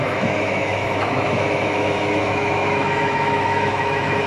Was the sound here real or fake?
fake